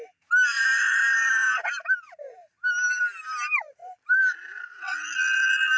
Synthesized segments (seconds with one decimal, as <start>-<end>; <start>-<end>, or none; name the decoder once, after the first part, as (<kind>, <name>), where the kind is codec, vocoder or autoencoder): 0.5-1.3 (vocoder, BigVGAN v2); 3.8-4.6